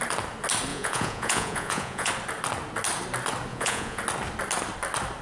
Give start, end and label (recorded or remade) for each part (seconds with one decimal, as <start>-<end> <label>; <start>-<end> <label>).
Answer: 0.0-0.7 recorded; 0.7-2.1 remade; 2.1-3.5 recorded; 3.5-4.0 remade; 4.0-5.2 recorded